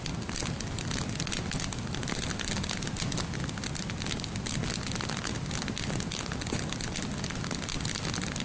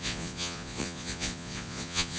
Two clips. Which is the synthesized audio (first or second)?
second